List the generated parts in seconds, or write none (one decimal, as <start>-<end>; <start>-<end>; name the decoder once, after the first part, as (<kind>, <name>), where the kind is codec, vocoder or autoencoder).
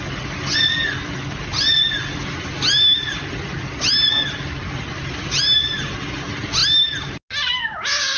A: none